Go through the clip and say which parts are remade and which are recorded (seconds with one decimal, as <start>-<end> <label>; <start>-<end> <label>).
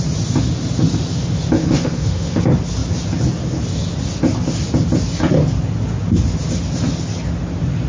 0.0-1.6 recorded; 1.6-2.4 remade; 2.4-7.9 recorded